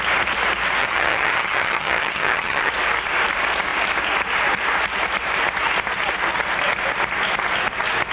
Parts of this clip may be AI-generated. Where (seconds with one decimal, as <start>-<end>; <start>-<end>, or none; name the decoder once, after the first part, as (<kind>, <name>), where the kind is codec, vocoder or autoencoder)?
0.8-2.7 (vocoder, HiFi-GAN)